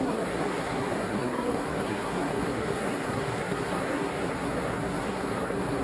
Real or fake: fake